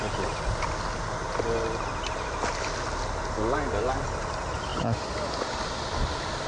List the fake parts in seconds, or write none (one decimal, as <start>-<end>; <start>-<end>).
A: none